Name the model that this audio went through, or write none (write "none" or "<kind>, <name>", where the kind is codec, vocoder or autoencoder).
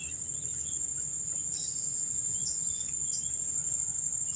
none